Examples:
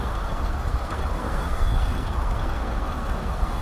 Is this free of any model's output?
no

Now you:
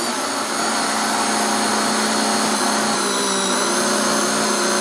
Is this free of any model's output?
yes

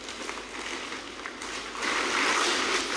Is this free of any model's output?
yes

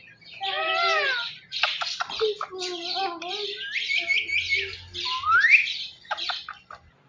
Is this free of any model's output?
yes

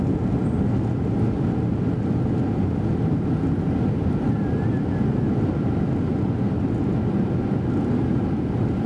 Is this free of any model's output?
yes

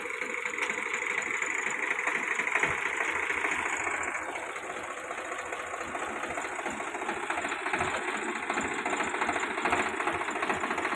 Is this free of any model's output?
yes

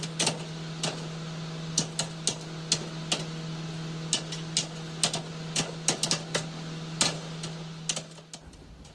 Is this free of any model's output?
yes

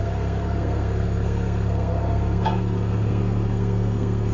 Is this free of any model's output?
no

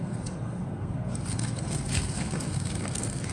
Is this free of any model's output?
no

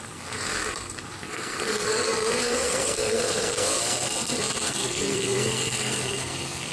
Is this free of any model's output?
no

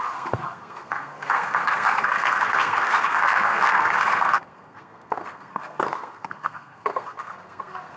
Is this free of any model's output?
no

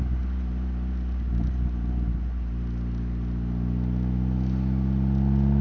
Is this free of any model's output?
yes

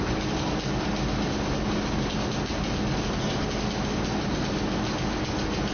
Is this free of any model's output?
yes